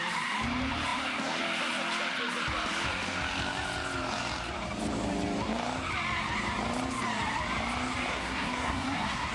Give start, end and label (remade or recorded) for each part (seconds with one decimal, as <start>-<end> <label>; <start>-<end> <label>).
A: 0.0-8.1 recorded; 8.1-9.3 remade